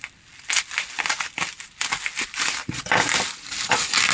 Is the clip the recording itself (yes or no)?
no